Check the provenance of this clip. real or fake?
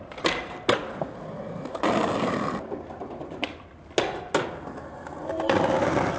real